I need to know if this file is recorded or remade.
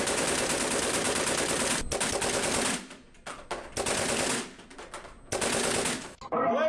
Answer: recorded